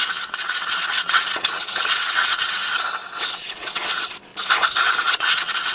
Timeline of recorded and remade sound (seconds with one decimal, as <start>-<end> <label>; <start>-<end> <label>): 0.0-2.6 remade; 2.6-3.2 recorded; 3.2-4.3 remade; 4.3-5.0 recorded; 5.0-5.7 remade